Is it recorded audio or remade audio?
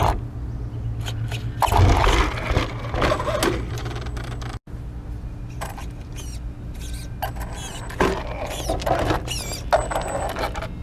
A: recorded